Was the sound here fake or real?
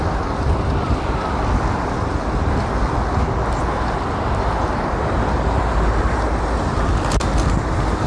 real